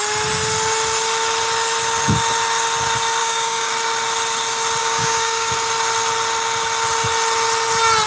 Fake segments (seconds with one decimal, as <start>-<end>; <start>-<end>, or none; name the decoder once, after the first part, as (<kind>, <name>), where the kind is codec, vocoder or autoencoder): 3.2-3.7 (codec, DAC); 4.8-5.5